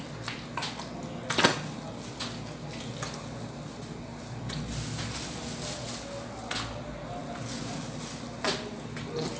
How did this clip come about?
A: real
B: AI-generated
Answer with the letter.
A